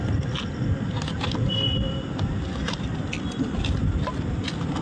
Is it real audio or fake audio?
real